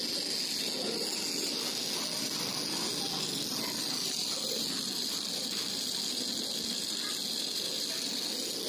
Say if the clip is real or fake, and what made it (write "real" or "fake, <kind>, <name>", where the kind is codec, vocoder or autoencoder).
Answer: real